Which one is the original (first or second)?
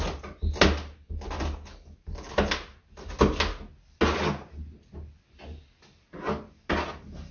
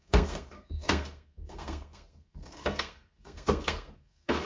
first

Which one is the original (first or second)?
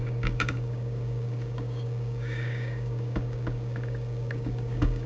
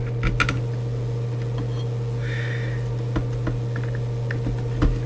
second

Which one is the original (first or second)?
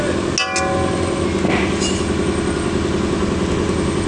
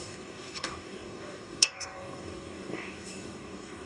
first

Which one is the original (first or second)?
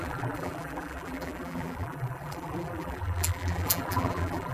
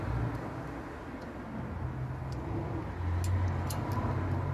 second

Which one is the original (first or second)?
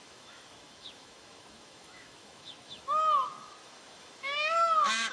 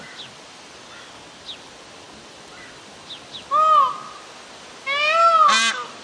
second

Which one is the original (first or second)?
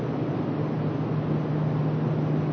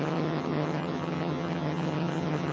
first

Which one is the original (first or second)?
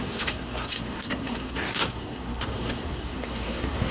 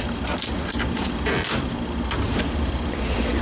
second